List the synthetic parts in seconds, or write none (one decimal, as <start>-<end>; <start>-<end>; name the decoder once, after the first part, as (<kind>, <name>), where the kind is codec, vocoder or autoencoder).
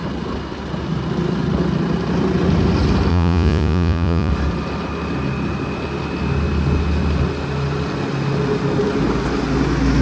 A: 3.1-4.3 (vocoder, Vocos)